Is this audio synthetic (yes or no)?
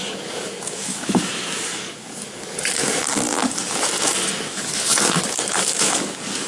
yes